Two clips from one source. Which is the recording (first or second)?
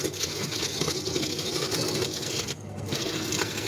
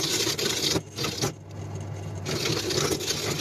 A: second